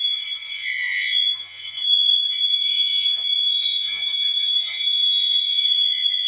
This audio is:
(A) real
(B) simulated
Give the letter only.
B